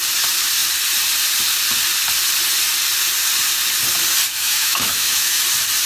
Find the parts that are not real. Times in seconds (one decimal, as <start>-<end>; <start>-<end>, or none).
4.3-5.4